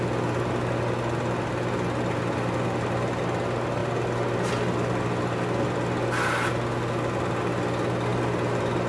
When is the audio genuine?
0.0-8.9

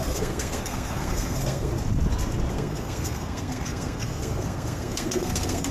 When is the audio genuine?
1.7-2.5

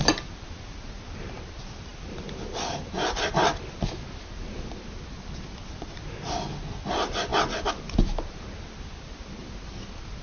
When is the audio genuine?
0.0-10.2

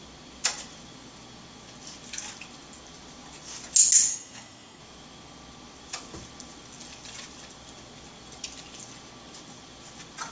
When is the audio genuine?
0.0-4.1; 4.8-10.3

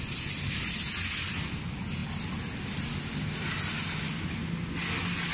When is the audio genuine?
0.0-5.3